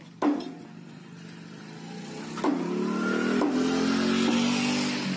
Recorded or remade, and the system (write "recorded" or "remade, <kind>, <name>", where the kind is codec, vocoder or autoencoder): recorded